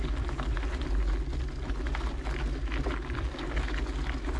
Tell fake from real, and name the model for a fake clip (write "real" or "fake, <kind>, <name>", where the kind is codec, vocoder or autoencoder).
real